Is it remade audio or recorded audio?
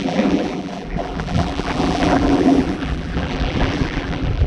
remade